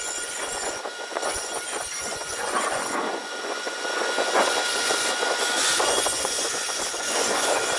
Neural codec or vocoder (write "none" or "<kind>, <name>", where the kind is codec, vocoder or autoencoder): vocoder, Vocos